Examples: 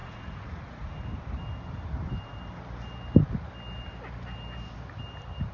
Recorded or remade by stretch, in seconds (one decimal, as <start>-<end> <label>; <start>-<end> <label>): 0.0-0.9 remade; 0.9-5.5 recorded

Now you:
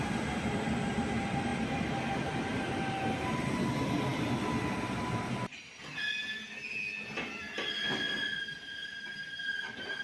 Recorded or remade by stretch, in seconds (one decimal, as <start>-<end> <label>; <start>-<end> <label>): 0.0-10.0 recorded

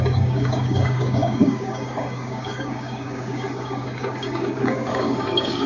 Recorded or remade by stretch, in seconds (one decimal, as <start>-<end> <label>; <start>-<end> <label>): 0.0-5.7 remade

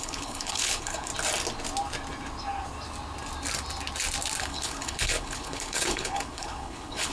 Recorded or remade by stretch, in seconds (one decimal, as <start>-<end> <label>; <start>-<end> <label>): 0.0-1.1 remade; 1.1-4.4 recorded; 4.4-7.1 remade

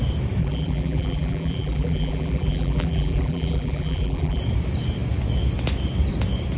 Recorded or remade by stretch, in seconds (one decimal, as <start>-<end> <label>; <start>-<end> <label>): 0.0-0.4 recorded; 0.4-4.4 remade; 4.4-6.6 recorded

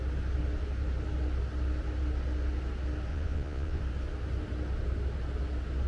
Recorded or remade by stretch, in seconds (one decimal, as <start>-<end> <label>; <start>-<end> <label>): 0.0-3.1 recorded; 3.1-3.8 remade; 3.8-5.9 recorded

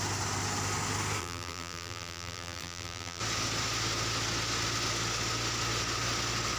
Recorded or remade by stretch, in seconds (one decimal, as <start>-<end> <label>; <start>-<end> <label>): 0.0-1.2 recorded; 1.2-3.2 remade; 3.2-6.6 recorded

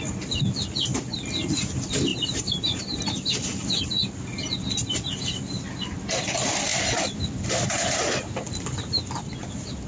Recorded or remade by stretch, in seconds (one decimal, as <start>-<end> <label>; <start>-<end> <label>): 0.0-2.1 recorded; 2.1-2.8 remade; 2.8-9.9 recorded